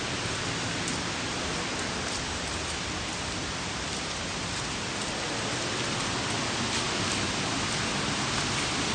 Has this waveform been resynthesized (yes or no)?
no